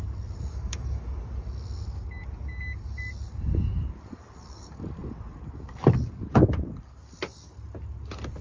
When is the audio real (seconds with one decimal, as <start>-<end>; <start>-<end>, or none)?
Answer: 0.0-0.5; 1.2-8.4